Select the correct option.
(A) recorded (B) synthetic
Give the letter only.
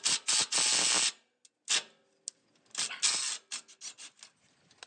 A